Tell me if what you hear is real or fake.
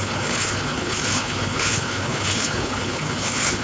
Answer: fake